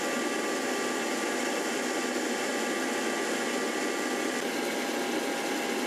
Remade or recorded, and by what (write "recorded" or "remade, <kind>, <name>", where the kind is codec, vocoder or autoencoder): recorded